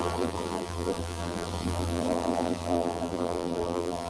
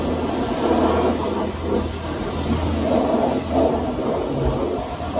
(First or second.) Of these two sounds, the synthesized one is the first